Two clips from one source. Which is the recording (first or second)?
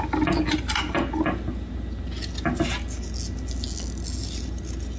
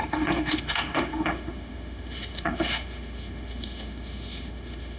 first